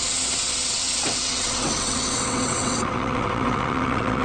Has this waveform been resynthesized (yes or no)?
yes